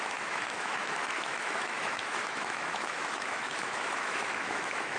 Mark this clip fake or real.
fake